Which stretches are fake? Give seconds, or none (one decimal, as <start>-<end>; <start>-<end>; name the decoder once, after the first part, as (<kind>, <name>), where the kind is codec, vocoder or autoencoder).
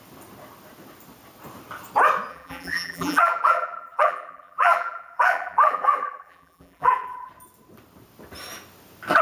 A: 2.3-7.3 (vocoder, BigVGAN v2)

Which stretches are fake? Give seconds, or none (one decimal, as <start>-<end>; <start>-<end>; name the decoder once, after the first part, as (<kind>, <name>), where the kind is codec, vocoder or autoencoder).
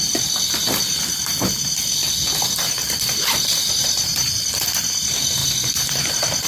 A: 3.6-4.3 (vocoder, BigVGAN v2)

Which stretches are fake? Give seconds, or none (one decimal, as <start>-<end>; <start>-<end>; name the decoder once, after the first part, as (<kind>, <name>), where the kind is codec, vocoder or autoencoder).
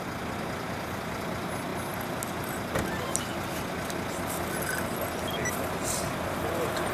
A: none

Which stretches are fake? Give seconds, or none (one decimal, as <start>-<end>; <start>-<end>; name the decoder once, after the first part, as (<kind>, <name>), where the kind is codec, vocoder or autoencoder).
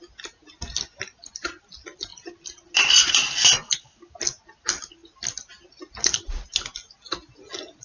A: none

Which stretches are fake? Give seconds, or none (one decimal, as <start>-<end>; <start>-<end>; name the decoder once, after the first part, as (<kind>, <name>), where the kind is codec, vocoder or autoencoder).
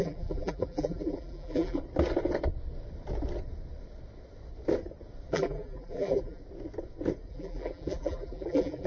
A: 0.0-1.8 (vocoder, BigVGAN v2); 5.3-6.4; 7.3-8.9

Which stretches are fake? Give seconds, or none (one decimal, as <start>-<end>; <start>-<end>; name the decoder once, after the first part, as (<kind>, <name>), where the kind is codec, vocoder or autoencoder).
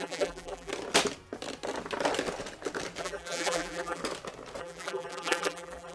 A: 0.0-0.7 (vocoder, BigVGAN v2); 3.0-4.0; 4.6-5.9